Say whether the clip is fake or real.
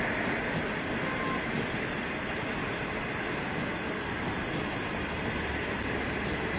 real